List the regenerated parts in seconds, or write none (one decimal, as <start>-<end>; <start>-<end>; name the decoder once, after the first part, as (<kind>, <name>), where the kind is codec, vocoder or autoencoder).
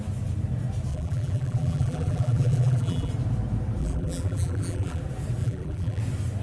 0.9-3.1 (vocoder, BigVGAN v2); 3.8-5.0; 5.4-6.0